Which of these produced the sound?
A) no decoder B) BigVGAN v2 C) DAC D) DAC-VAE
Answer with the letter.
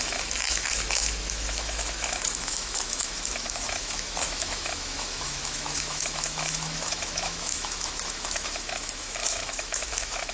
D